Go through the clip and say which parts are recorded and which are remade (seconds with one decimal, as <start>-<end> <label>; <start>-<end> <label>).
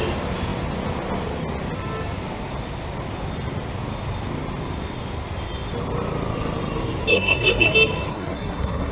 0.0-7.1 recorded; 7.1-7.7 remade; 7.7-8.1 recorded; 8.1-8.9 remade